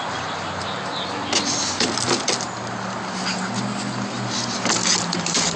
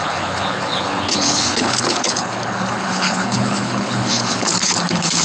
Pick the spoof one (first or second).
second